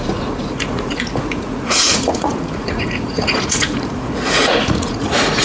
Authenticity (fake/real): fake